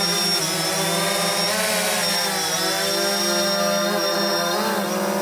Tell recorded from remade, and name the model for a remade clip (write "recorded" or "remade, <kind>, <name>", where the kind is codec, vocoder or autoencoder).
recorded